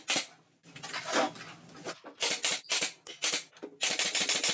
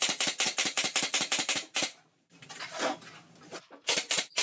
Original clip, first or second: first